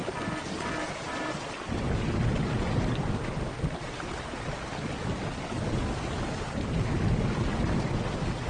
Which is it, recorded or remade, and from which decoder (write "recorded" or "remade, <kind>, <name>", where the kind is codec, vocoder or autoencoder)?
recorded